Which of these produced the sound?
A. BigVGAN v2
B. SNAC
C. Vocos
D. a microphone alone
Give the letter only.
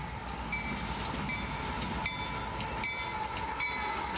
D